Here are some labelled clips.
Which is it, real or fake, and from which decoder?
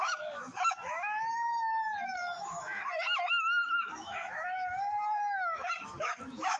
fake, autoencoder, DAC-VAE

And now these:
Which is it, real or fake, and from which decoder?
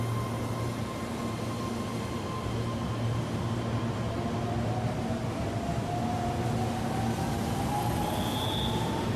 real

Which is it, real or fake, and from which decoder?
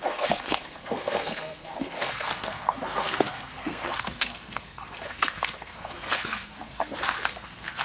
fake, codec, SNAC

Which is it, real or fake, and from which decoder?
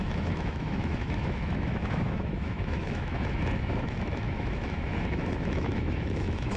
fake, autoencoder, DAC-VAE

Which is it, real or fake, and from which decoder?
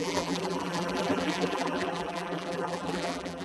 fake, vocoder, BigVGAN v2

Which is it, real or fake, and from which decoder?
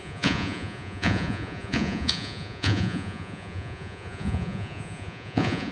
fake, vocoder, Vocos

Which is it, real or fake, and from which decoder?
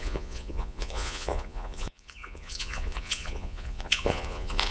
fake, vocoder, Vocos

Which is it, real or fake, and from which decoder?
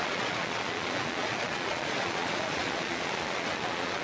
fake, vocoder, Vocos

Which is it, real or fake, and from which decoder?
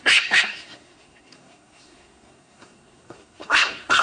fake, codec, SNAC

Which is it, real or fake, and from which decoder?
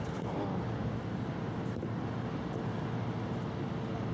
real